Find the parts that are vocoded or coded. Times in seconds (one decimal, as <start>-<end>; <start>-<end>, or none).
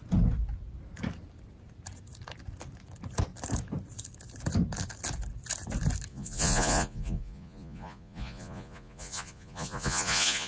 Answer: 6.1-10.5